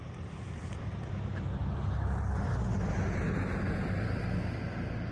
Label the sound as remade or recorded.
recorded